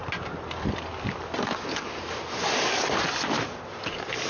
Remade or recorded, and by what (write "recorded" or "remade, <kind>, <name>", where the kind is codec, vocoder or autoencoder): recorded